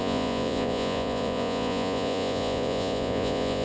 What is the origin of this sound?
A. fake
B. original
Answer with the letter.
A